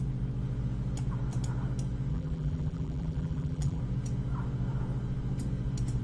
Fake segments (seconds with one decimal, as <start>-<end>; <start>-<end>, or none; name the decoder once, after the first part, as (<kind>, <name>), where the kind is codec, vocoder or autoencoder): 2.1-3.8 (vocoder, BigVGAN v2)